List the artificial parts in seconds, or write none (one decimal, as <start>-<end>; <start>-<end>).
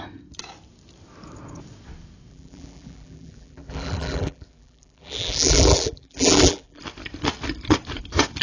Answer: 2.3-6.8